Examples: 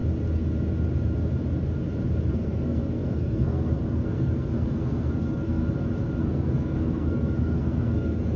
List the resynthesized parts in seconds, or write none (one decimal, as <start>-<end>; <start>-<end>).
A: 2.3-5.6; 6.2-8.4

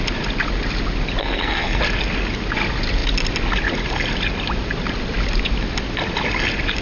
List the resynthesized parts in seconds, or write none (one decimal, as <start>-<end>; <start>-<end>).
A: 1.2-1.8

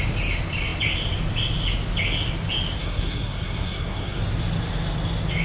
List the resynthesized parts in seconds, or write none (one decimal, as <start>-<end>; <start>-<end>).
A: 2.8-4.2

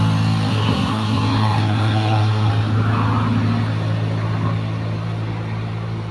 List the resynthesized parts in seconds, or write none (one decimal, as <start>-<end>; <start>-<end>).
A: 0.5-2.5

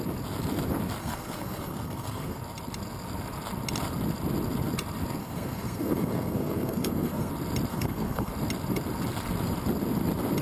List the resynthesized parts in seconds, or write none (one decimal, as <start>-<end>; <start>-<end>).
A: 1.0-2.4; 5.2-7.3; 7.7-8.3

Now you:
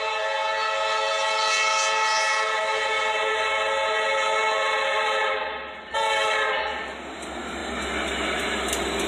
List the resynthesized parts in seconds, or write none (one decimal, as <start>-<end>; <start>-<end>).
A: none